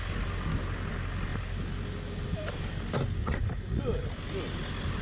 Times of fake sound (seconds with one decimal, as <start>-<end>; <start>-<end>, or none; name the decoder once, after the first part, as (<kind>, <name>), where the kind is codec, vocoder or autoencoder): 3.2-3.8 (vocoder, Vocos)